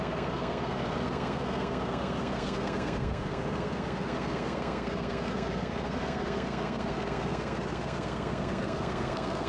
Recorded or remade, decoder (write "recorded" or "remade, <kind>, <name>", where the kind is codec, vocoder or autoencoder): remade, codec, SNAC